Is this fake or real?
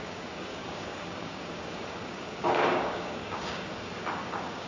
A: fake